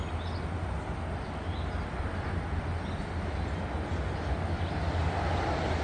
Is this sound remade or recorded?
recorded